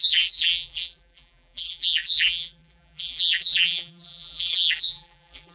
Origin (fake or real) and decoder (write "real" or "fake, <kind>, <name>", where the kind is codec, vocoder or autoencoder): fake, vocoder, BigVGAN v2